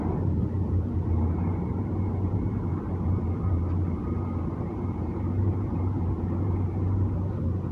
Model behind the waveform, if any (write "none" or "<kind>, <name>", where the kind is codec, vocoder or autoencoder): vocoder, BigVGAN v2